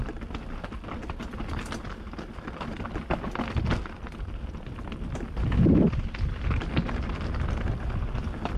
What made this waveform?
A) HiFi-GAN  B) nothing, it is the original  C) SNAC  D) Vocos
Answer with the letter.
B